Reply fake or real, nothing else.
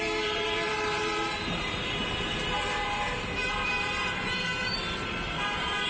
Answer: fake